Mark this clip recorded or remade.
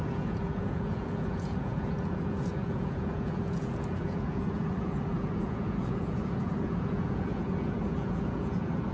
remade